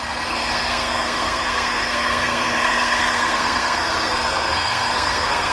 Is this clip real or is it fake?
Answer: fake